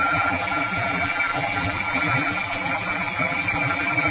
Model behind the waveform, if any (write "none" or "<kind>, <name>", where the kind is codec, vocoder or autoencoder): vocoder, BigVGAN v2